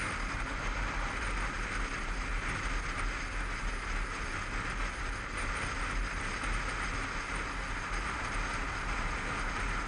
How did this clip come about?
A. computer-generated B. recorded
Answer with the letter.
B